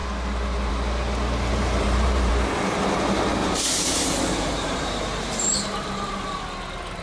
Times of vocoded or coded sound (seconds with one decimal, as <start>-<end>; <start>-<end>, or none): 1.5-2.3; 3.4-6.4